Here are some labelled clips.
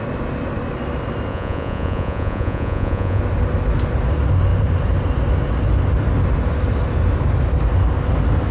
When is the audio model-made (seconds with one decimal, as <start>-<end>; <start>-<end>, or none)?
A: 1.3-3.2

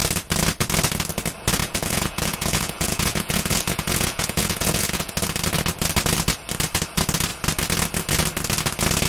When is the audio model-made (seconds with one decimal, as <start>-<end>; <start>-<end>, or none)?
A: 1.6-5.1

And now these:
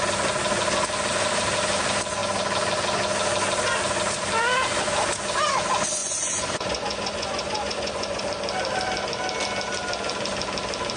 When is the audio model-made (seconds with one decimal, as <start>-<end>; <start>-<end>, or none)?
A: 6.0-8.2

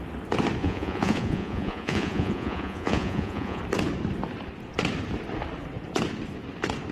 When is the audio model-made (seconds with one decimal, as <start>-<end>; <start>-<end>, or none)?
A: 0.6-3.6

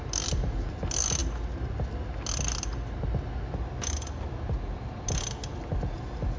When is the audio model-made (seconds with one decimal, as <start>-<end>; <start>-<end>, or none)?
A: none

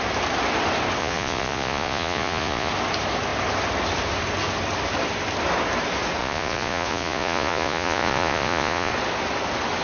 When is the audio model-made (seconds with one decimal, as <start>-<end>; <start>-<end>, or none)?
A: 1.0-2.7; 6.2-8.9